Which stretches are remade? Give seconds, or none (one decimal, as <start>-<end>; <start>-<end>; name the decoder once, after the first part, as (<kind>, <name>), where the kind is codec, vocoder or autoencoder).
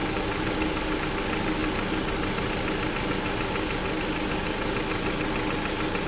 none